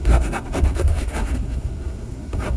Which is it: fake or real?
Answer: fake